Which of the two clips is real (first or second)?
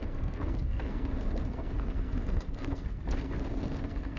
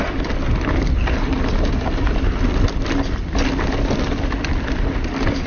second